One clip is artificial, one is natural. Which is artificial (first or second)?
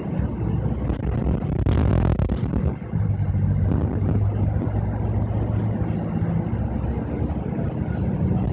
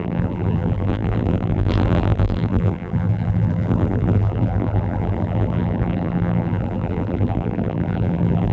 second